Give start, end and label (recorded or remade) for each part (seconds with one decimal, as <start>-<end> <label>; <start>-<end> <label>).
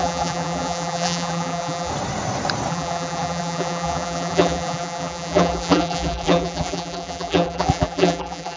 0.0-1.9 remade; 1.9-2.7 recorded; 2.7-8.6 remade